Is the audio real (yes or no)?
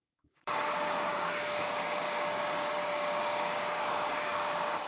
no